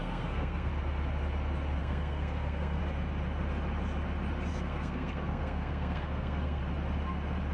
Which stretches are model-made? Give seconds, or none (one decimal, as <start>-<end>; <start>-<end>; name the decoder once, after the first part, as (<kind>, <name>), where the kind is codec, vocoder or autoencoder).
0.0-0.7 (codec, SNAC); 1.8-2.8; 4.5-6.6